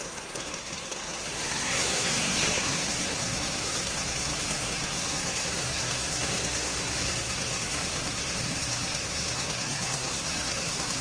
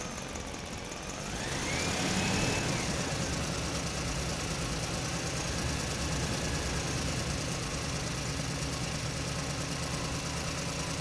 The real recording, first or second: second